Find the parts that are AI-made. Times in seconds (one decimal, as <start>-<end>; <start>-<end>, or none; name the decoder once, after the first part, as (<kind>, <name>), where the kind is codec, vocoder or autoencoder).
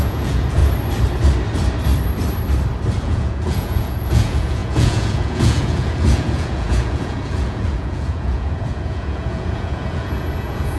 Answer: 0.0-0.6 (vocoder, Vocos); 3.0-10.8